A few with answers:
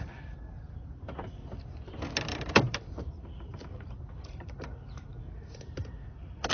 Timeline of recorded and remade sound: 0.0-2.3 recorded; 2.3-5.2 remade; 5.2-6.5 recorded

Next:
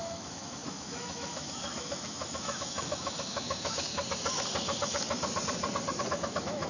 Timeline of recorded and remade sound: 0.0-3.9 remade; 3.9-6.1 recorded; 6.1-6.7 remade

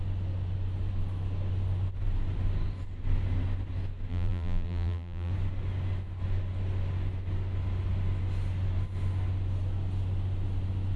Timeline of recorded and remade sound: 0.0-4.1 recorded; 4.1-5.3 remade; 5.3-11.0 recorded

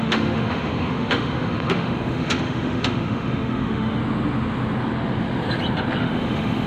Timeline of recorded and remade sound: 0.0-4.0 remade; 4.0-6.0 recorded; 6.0-6.7 remade

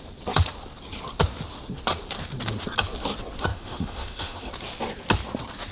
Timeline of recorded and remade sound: 0.0-3.5 recorded; 3.5-4.5 remade; 4.5-5.7 recorded

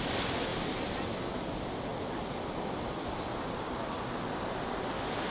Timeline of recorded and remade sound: 0.0-5.3 recorded

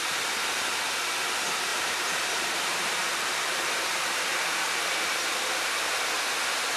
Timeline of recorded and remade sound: 0.0-1.7 recorded; 1.7-5.8 remade; 5.8-6.8 recorded